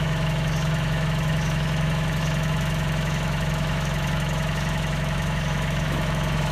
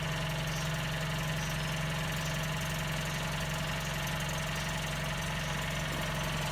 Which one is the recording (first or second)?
second